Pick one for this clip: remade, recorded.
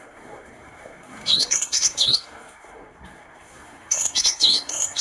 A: remade